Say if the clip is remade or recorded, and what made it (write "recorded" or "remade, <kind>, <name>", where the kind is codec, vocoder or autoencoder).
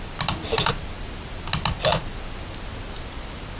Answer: recorded